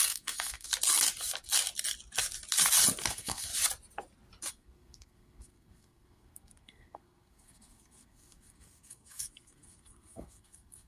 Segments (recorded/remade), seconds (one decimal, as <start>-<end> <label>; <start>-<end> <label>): 0.0-0.7 remade; 0.7-3.1 recorded; 3.1-3.5 remade; 3.5-4.5 recorded; 4.5-10.9 remade